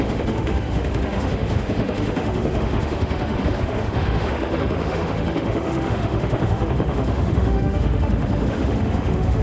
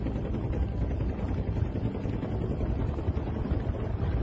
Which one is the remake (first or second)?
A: first